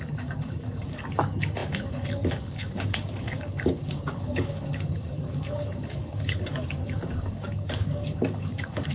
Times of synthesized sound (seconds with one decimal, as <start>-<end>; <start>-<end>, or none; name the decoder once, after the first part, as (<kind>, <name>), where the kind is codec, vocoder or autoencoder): 0.0-8.9 (codec, DAC)